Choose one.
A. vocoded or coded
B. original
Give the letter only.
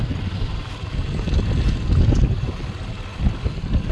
B